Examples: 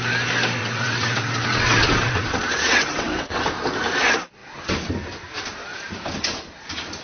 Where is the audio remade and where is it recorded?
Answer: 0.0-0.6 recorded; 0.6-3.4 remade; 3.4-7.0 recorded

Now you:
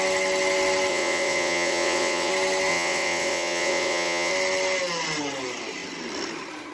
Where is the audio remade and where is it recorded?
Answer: 0.0-0.9 recorded; 0.9-2.3 remade; 2.3-2.7 recorded; 2.7-4.3 remade; 4.3-6.7 recorded

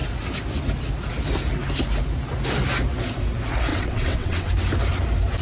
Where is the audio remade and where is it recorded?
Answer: 0.0-3.7 recorded; 3.7-4.5 remade; 4.5-5.4 recorded